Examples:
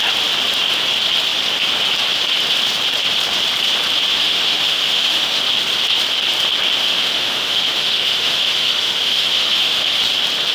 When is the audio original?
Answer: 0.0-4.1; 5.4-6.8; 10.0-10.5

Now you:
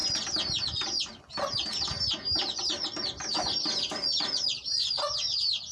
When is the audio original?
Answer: 0.0-5.7

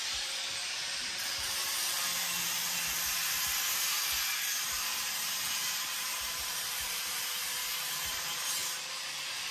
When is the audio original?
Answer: none

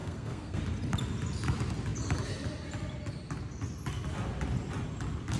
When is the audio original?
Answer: 0.6-5.4